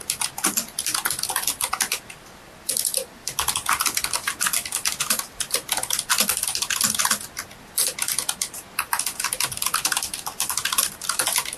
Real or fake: real